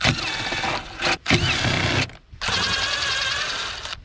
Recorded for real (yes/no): yes